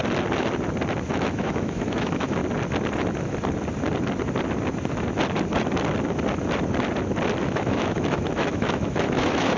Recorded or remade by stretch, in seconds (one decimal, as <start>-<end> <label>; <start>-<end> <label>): 0.0-1.1 recorded; 1.1-2.4 remade; 2.4-7.4 recorded; 7.4-9.6 remade

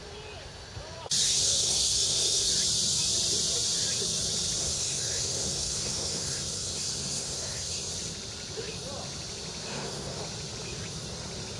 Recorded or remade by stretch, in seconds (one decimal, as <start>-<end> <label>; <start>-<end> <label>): 0.0-1.2 recorded; 1.2-2.5 remade; 2.5-4.6 recorded; 4.6-7.9 remade; 7.9-9.7 recorded; 9.7-10.2 remade; 10.2-11.6 recorded

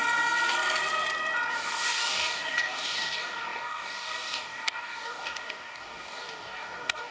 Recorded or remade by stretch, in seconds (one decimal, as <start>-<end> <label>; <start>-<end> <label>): 0.0-1.5 recorded; 1.5-7.1 remade